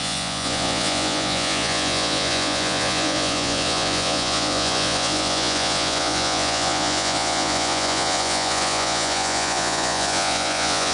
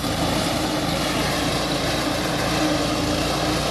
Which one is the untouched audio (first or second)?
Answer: second